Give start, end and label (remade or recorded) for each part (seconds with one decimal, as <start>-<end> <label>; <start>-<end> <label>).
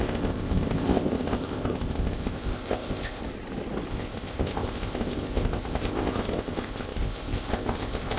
0.0-3.2 remade; 3.2-3.9 recorded; 3.9-8.2 remade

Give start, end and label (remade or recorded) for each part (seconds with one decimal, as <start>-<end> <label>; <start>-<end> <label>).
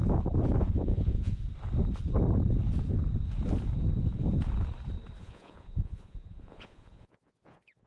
0.0-0.6 recorded; 0.6-1.4 remade; 1.4-5.2 recorded; 5.2-7.9 remade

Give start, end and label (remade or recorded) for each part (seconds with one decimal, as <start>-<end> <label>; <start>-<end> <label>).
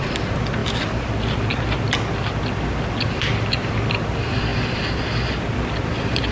0.0-6.3 recorded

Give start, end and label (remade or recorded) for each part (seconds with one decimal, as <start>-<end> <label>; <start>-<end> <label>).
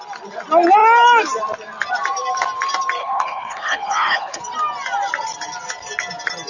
0.0-3.0 recorded; 3.0-4.4 remade; 4.4-6.5 recorded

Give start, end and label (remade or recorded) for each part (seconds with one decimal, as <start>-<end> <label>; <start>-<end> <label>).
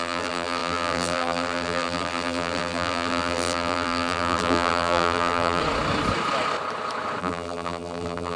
0.0-5.6 remade; 5.6-7.2 recorded; 7.2-8.4 remade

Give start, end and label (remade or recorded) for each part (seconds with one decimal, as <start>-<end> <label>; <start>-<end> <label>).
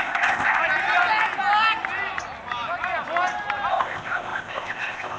0.0-0.6 remade; 0.6-3.7 recorded; 3.7-5.2 remade